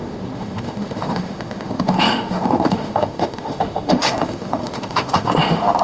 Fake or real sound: fake